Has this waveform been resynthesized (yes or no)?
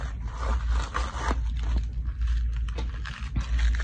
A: no